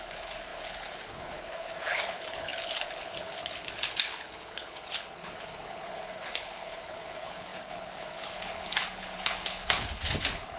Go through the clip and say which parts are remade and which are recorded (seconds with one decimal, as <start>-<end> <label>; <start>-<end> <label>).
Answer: 0.0-10.6 remade